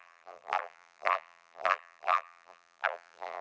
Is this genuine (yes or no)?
no